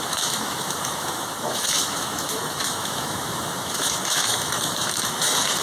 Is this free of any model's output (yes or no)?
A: no